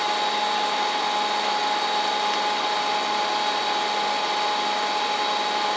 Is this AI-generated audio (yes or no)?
no